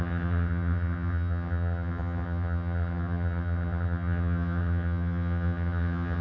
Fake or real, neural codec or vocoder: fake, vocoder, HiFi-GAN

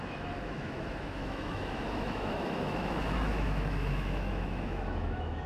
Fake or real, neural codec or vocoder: fake, autoencoder, DAC-VAE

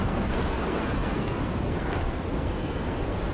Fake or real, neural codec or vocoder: fake, codec, SNAC